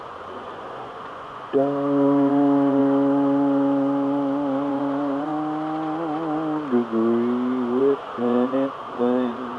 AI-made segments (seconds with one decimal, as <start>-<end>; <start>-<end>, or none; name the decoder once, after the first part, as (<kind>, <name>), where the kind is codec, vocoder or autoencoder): 0.0-2.8 (vocoder, Vocos); 4.7-5.3; 7.8-9.6